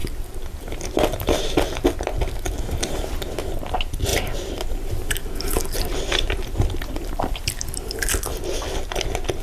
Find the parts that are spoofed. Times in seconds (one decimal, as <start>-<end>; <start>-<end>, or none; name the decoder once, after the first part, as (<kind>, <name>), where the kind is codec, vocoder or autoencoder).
0.0-1.4 (vocoder, BigVGAN v2); 4.1-8.1